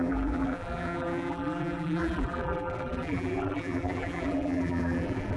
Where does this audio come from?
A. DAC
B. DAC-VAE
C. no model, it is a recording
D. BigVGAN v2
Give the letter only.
D